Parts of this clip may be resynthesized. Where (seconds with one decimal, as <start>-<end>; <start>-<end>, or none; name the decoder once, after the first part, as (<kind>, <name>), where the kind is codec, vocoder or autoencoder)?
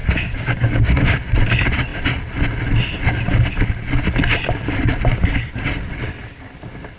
0.0-1.3 (codec, DAC)